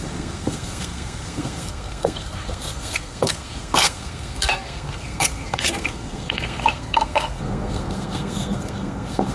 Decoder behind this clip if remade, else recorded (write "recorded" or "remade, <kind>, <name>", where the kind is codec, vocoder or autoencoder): remade, codec, SNAC